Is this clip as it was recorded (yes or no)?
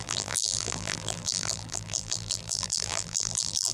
no